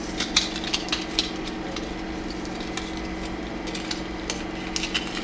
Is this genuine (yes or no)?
yes